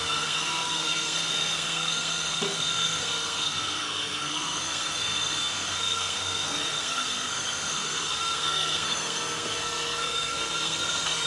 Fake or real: fake